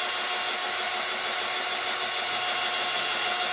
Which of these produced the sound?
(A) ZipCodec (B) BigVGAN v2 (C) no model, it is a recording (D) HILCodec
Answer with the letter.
C